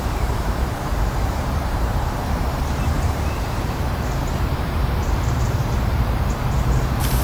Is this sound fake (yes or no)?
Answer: yes